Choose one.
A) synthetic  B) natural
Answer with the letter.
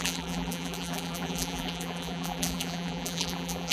A